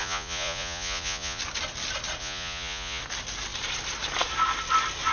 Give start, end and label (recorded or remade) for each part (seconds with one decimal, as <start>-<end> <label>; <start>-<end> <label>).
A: 0.0-1.4 remade; 1.4-2.2 recorded; 2.2-3.0 remade; 3.0-5.1 recorded